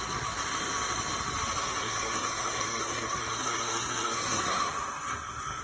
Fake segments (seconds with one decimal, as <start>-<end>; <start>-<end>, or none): 1.8-5.6

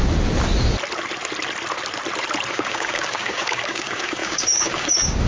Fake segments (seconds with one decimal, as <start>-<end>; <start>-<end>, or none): 2.5-5.3